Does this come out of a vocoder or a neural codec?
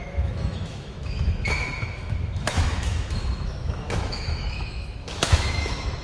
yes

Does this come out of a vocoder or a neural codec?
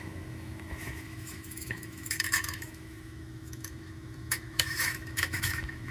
yes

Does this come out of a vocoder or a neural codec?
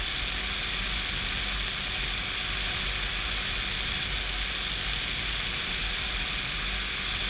no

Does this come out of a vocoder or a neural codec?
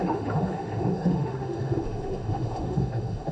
yes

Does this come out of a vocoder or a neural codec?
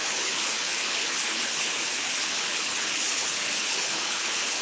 yes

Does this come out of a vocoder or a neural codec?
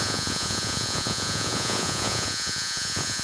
yes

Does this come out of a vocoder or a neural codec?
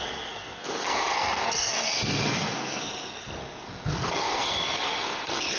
yes